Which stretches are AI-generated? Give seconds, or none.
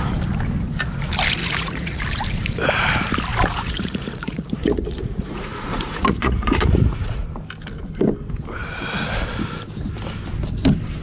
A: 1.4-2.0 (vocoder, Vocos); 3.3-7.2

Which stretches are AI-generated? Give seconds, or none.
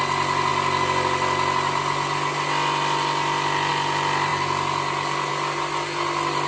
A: none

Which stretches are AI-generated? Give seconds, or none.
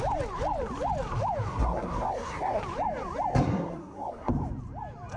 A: 1.5-2.6 (codec, SNAC); 3.3-4.3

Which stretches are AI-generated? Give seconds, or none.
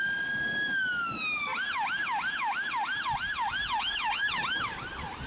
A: none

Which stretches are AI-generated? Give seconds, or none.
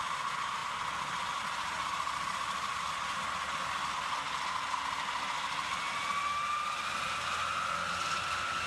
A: none